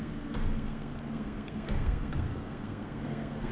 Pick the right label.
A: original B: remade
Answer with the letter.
B